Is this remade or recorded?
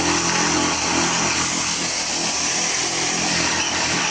recorded